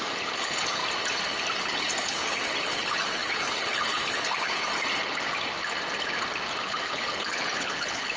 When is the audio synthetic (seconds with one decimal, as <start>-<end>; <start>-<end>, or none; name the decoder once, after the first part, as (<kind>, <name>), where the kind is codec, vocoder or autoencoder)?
0.0-0.8 (codec, HILCodec); 1.6-4.7; 6.6-8.2